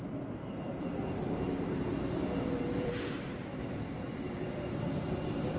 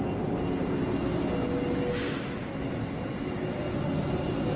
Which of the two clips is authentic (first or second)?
second